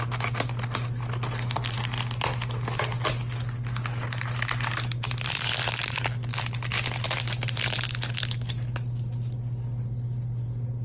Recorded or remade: recorded